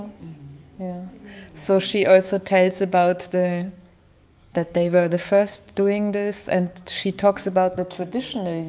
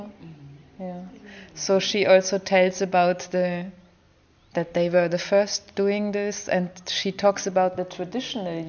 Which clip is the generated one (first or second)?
first